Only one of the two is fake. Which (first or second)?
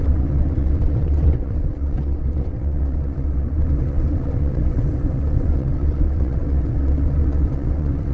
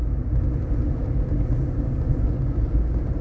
first